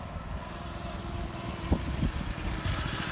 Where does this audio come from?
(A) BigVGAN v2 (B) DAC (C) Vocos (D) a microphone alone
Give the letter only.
D